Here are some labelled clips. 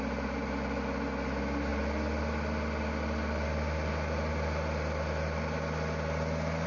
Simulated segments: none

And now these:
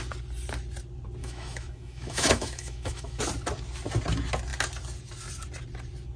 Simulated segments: 1.2-3.2 (autoencoder, DAC-VAE)

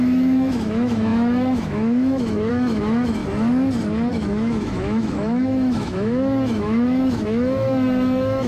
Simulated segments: 0.0-3.2 (autoencoder, DAC-VAE); 4.1-8.5

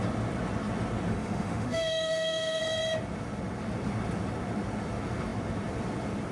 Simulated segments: 1.1-2.6 (autoencoder, DAC-VAE)

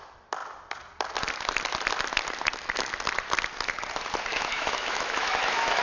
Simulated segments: 4.3-5.8 (autoencoder, DAC-VAE)

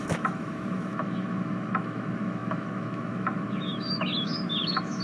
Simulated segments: 0.0-5.0 (autoencoder, DAC-VAE)

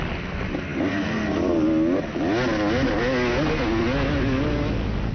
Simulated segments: none

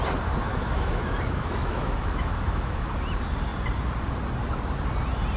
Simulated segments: 0.5-2.9 (autoencoder, DAC-VAE)